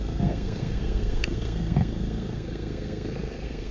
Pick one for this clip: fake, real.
fake